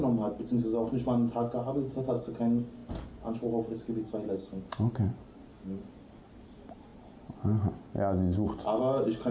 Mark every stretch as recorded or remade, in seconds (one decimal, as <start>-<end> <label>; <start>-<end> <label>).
0.0-9.3 recorded